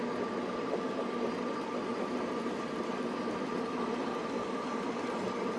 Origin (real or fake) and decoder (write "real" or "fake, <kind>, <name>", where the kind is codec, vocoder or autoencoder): real